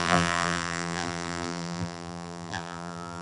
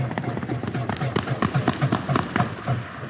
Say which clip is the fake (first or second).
first